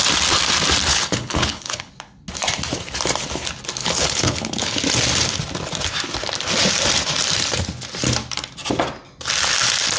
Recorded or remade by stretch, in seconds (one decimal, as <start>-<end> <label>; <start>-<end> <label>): 0.0-0.9 recorded; 0.9-1.9 remade; 1.9-3.8 recorded; 3.8-4.8 remade; 4.8-10.0 recorded